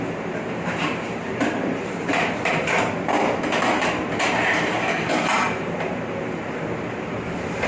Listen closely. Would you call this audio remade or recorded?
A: remade